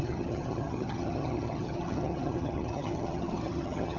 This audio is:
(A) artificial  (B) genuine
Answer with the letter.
A